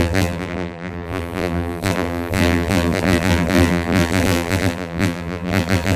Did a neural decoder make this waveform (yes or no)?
yes